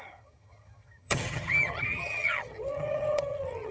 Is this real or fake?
fake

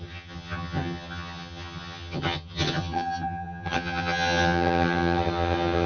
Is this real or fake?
fake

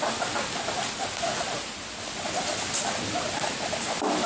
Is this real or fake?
real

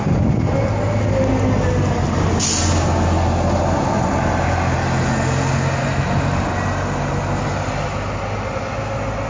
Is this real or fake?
real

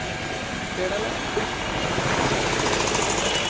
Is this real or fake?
real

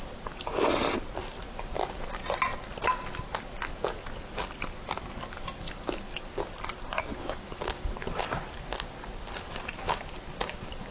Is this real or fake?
real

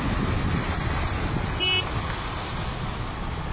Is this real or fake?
real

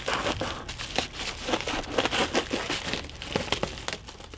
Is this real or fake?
real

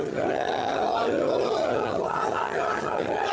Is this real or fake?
fake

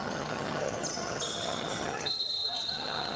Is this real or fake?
fake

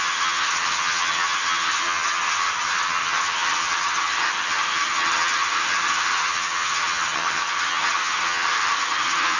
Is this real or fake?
fake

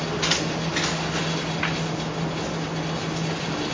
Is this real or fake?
real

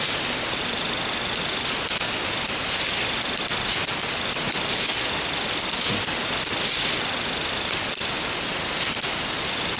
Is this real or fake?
real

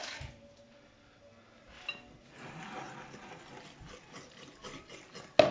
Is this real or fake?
real